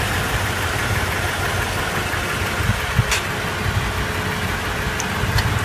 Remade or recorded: recorded